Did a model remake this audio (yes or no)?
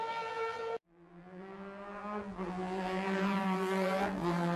yes